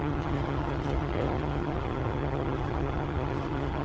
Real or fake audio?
fake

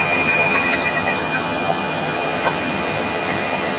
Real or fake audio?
fake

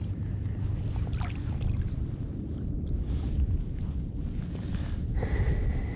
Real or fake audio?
real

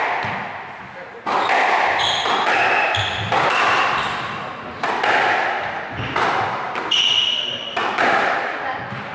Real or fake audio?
real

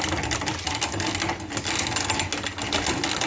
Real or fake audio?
real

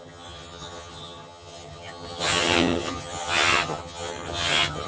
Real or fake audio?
fake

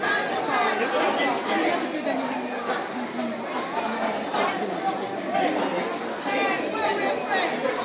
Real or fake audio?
real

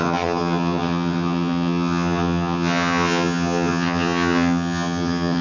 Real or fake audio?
fake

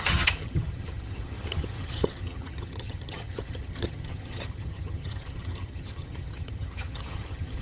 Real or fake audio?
fake